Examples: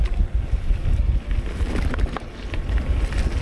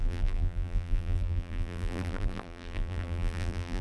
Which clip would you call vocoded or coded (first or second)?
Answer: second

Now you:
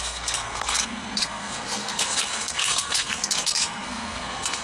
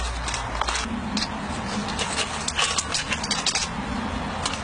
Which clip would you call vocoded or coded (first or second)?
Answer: first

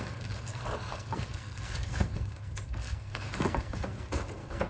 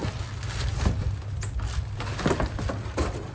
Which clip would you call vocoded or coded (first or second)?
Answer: first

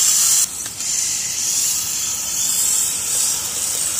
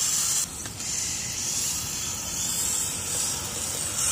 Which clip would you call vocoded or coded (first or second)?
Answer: first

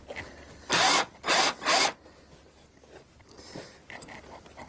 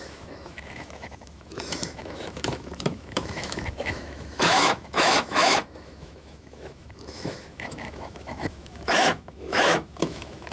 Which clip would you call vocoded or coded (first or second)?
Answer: second